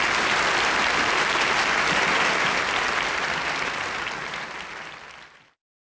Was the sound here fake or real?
real